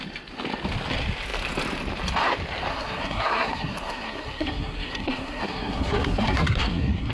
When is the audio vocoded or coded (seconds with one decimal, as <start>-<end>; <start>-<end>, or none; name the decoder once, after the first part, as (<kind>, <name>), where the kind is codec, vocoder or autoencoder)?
2.7-7.1 (codec, SNAC)